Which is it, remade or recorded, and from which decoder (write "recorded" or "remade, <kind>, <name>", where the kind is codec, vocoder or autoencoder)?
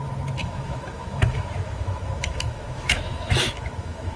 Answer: remade, autoencoder, DAC-VAE